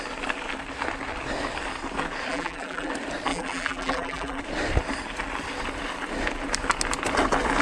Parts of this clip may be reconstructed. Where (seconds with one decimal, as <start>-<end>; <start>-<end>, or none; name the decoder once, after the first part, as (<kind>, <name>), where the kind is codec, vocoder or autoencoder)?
2.3-2.9 (vocoder, BigVGAN v2); 3.3-4.4

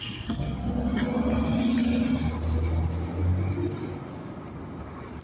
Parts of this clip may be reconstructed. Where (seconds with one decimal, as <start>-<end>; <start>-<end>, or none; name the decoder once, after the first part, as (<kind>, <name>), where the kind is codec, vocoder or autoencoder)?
0.0-0.7 (codec, SNAC)

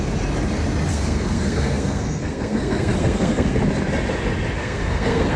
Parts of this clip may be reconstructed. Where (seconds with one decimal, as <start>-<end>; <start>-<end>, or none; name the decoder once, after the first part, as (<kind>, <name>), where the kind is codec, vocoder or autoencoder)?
0.9-3.6 (codec, SNAC); 4.6-5.4

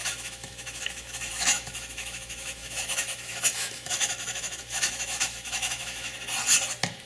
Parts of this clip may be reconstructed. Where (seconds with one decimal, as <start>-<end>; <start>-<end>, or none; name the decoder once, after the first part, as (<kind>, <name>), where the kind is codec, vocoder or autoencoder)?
0.0-6.1 (autoencoder, DAC-VAE)

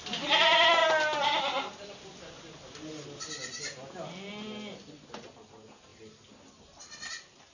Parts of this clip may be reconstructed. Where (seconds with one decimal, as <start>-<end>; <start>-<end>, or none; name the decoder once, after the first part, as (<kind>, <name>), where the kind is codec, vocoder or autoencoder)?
none

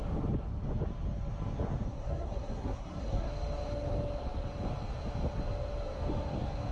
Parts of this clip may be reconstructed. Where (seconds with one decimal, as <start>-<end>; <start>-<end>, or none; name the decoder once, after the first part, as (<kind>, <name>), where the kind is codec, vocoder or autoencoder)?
1.9-3.3 (codec, SNAC)

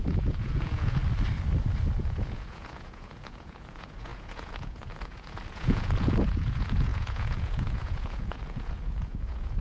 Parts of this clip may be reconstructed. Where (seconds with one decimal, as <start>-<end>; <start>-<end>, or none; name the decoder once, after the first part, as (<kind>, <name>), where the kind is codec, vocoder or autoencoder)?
0.0-1.0 (vocoder, Vocos); 2.0-9.6